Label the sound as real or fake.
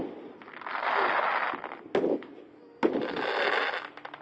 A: real